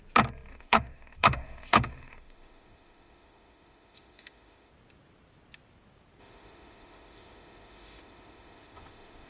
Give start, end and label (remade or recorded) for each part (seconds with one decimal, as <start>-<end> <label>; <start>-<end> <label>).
0.0-0.5 recorded; 0.5-4.7 remade; 4.7-6.2 recorded; 6.2-9.3 remade